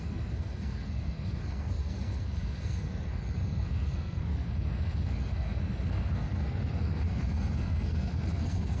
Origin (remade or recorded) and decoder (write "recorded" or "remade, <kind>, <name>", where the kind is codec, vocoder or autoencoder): remade, codec, SNAC